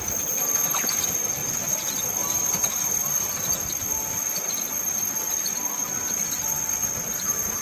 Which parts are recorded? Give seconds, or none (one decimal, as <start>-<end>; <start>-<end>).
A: 0.0-7.6